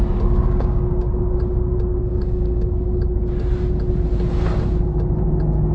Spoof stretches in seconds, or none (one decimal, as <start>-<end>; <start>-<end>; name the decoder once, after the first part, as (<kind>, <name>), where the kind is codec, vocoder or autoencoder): 0.4-1.2 (codec, DAC); 2.0-3.2